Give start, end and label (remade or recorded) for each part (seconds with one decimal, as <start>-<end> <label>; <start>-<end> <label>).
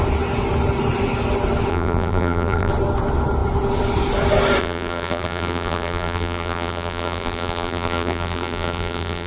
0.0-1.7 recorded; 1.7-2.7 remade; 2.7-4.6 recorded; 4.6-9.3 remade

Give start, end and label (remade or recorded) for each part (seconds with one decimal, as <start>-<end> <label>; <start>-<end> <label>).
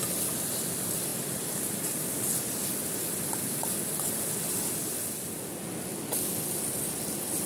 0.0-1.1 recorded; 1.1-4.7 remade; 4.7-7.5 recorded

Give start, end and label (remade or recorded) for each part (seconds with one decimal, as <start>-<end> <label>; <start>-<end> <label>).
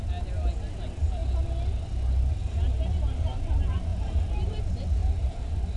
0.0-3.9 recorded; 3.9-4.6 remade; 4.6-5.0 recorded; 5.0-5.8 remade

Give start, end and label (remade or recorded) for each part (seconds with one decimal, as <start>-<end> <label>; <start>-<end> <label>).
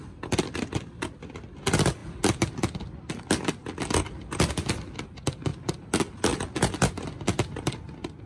0.0-8.3 recorded